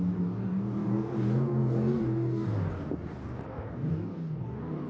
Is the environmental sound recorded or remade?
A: remade